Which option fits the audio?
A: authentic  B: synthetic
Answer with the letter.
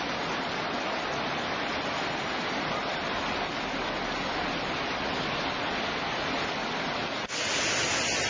A